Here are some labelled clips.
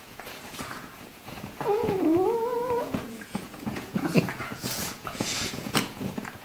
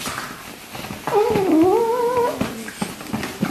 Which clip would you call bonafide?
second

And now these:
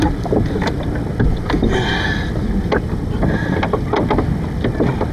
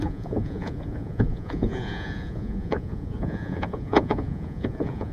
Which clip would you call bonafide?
first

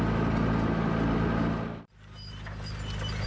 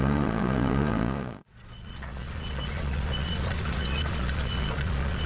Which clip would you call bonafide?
first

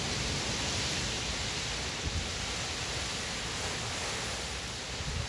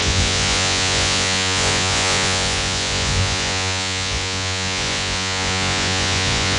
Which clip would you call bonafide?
first